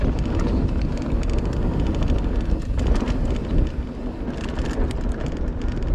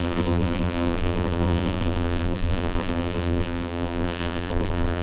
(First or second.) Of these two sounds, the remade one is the second